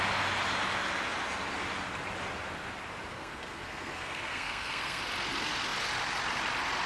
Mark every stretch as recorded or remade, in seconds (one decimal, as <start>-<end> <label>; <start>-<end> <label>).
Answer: 0.0-3.1 recorded; 3.1-5.0 remade; 5.0-6.9 recorded